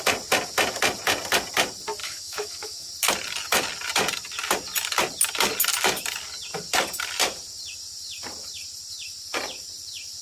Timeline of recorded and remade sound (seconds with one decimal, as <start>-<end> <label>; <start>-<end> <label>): 0.0-2.0 recorded; 2.0-2.9 remade; 2.9-10.2 recorded